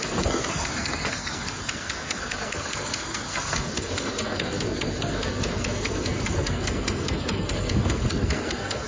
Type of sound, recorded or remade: remade